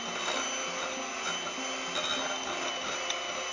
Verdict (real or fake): real